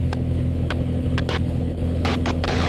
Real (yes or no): no